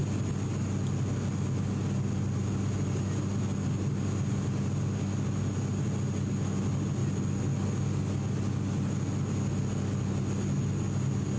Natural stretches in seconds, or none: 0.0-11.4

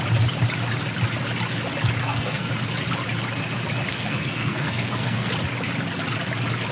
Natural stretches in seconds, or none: 0.0-2.0; 2.5-3.9; 5.3-6.7

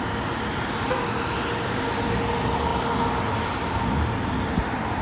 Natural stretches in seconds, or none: 0.0-5.0